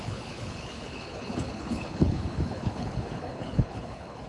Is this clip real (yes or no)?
no